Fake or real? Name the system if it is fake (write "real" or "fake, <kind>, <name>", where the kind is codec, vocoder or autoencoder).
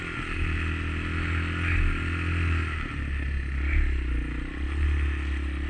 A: real